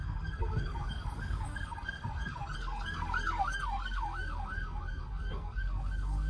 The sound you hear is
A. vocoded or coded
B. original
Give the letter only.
A